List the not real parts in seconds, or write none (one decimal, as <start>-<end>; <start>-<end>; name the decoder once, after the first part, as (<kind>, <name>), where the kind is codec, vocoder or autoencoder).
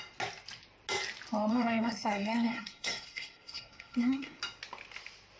1.5-4.4 (codec, SNAC)